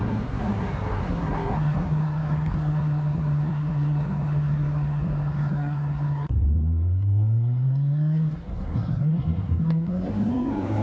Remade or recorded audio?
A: remade